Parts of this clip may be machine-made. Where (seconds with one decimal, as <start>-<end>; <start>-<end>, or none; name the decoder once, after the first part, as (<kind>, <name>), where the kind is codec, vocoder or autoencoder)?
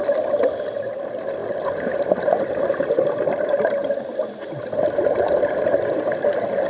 0.0-1.4 (vocoder, BigVGAN v2); 2.6-6.7